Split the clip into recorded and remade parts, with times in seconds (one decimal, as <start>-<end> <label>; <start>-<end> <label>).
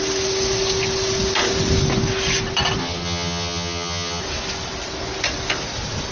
0.0-2.8 recorded; 2.8-4.2 remade; 4.2-6.1 recorded